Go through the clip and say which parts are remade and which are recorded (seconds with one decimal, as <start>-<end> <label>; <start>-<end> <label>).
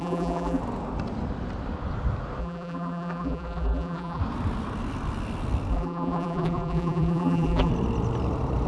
0.0-0.6 remade; 0.6-2.4 recorded; 2.4-4.2 remade; 4.2-5.7 recorded; 5.7-7.7 remade; 7.7-8.7 recorded